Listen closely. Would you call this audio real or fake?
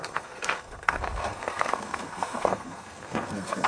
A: fake